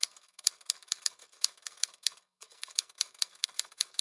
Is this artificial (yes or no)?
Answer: yes